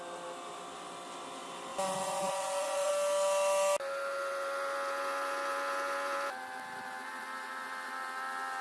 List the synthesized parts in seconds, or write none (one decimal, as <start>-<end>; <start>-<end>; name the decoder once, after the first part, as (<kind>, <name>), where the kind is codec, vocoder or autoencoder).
1.7-2.9 (vocoder, Vocos)